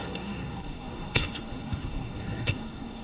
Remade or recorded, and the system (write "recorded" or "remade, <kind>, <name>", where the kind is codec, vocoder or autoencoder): remade, codec, SNAC